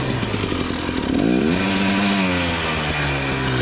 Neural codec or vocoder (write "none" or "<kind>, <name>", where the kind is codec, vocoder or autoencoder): none